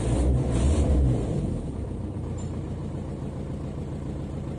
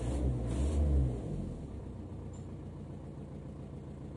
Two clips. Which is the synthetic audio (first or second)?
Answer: first